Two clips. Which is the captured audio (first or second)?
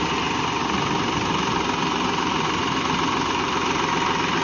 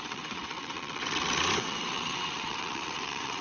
first